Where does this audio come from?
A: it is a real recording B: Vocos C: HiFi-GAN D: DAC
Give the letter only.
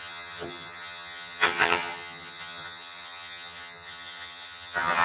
C